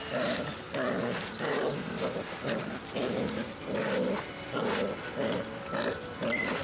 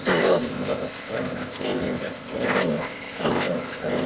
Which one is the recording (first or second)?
first